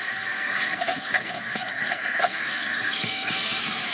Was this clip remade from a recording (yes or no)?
yes